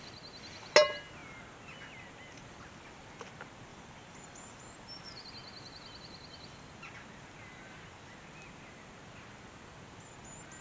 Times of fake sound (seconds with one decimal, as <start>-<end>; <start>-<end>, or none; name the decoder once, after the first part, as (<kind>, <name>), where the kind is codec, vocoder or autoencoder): 3.7-4.6 (vocoder, BigVGAN v2)